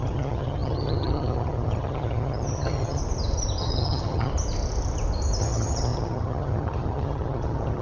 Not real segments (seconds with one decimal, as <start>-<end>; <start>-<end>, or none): 0.0-3.0; 3.6-4.3; 5.4-7.8